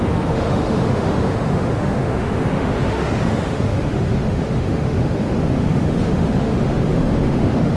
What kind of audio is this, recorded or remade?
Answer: remade